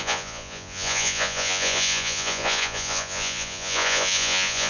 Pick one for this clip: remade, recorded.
remade